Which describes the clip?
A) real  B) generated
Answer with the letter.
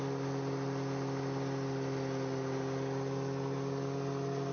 A